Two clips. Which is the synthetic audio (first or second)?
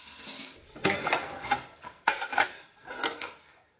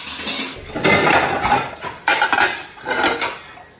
first